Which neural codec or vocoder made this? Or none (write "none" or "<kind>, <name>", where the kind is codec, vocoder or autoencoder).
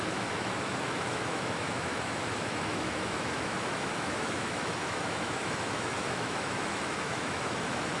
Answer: autoencoder, DAC-VAE